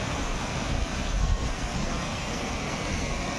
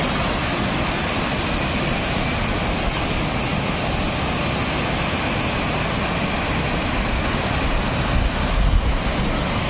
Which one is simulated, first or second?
first